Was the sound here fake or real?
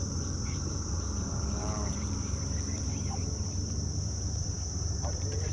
fake